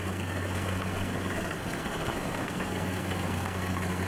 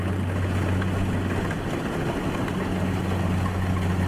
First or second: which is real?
second